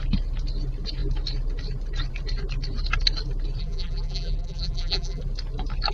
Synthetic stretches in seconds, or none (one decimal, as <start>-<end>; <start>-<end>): 3.6-5.2